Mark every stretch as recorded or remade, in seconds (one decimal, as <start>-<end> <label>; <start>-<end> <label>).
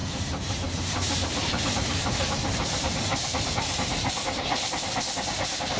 0.0-3.5 remade; 3.5-5.8 recorded